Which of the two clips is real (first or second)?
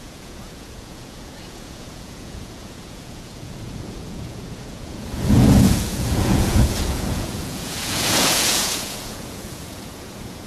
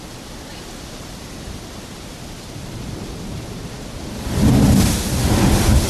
second